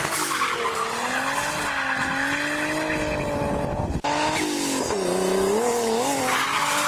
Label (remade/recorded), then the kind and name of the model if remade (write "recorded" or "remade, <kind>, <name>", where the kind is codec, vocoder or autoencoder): recorded